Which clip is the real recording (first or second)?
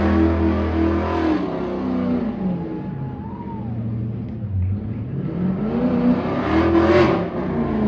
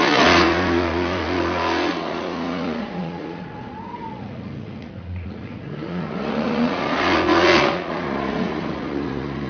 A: first